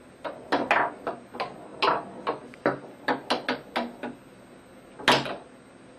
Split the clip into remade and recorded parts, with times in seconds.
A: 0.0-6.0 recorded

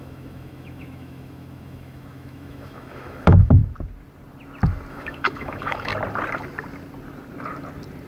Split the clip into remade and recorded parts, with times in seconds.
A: 0.0-3.6 remade; 3.6-4.9 recorded; 4.9-5.9 remade; 5.9-8.1 recorded

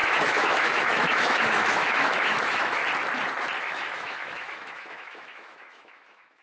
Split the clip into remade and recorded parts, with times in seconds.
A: 0.0-2.8 remade; 2.8-3.6 recorded; 3.6-6.4 remade

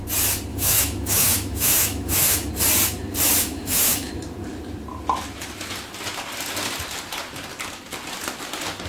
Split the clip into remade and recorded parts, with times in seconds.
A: 0.0-0.5 recorded; 0.5-2.5 remade; 2.5-3.4 recorded; 3.4-4.1 remade; 4.1-8.9 recorded

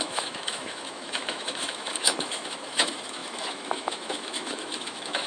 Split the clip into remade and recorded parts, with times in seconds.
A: 0.0-5.3 remade